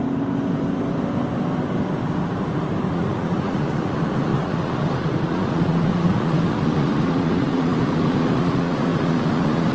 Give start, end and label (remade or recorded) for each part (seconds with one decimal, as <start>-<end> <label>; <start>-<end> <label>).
0.0-2.9 recorded; 2.9-9.7 remade